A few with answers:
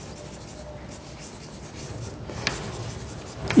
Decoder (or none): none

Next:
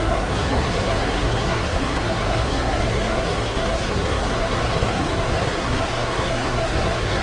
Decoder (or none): codec, SNAC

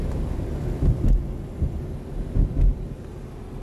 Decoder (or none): none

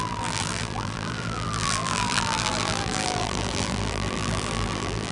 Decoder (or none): vocoder, BigVGAN v2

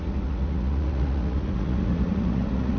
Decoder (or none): vocoder, Vocos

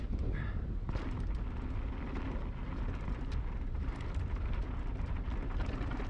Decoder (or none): none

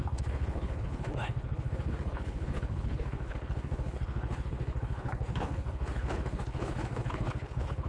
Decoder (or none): codec, HILCodec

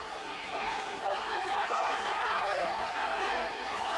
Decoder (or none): codec, SNAC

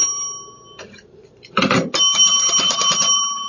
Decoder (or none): vocoder, BigVGAN v2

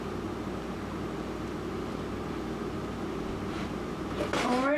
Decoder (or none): none